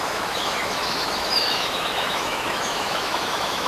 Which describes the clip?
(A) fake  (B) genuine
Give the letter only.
A